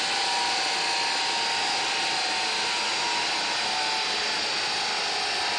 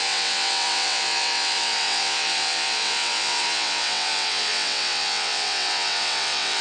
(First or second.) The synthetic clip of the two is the second